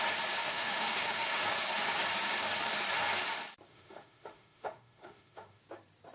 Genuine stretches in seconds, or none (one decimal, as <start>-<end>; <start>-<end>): 0.0-0.4; 1.4-3.7; 5.6-6.1